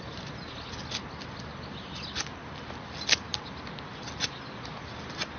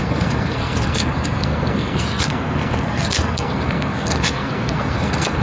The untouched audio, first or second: first